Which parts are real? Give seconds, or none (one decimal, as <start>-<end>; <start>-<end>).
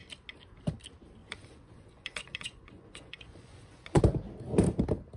0.0-1.2; 4.0-5.2